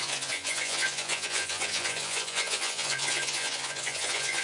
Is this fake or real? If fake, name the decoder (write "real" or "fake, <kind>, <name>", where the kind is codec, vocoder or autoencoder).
fake, vocoder, Vocos